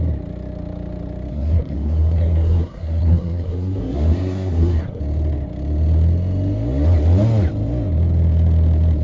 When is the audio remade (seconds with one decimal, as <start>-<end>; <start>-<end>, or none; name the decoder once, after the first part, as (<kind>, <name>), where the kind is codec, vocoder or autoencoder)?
1.3-5.0 (codec, SNAC)